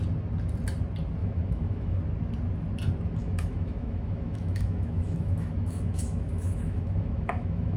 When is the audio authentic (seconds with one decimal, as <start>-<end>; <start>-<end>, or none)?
0.0-1.2; 2.0-3.2